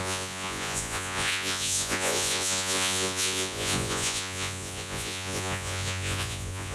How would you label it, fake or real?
fake